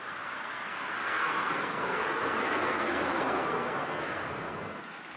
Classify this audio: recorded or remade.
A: remade